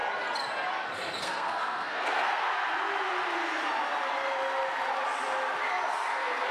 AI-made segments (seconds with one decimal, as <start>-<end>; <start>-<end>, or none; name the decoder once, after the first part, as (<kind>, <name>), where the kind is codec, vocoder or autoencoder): 1.2-2.5 (codec, SNAC); 5.9-6.5

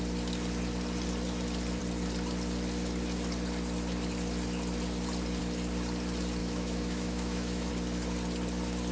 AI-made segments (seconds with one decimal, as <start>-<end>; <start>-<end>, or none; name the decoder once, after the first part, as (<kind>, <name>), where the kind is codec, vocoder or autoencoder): 6.4-7.7 (autoencoder, DAC-VAE)